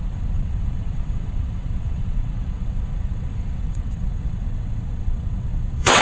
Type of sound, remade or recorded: remade